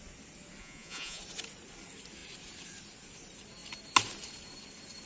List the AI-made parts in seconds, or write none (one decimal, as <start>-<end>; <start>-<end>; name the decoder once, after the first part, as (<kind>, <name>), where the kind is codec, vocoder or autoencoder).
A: 0.6-1.2 (vocoder, Vocos)